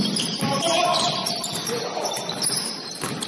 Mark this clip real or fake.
real